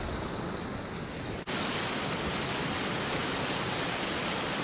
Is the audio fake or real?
real